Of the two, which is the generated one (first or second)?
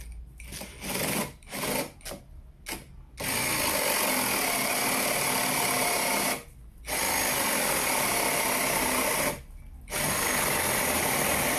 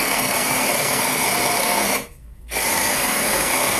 second